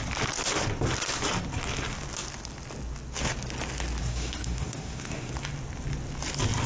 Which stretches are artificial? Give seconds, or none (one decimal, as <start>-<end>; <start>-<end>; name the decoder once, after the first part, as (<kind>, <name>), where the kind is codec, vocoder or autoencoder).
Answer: 4.0-5.3 (codec, SNAC)